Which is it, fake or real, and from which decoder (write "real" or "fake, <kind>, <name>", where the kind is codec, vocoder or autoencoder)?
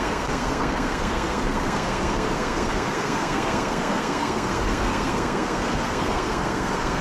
fake, codec, SNAC